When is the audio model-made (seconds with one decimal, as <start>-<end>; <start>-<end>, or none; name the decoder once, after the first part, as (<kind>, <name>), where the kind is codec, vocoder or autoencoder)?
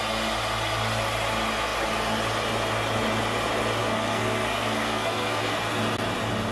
3.8-5.5 (codec, SNAC)